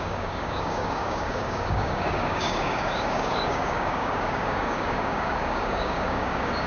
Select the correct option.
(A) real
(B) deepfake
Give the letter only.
B